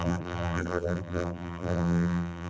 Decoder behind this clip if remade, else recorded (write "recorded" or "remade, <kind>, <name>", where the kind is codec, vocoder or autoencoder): remade, vocoder, BigVGAN v2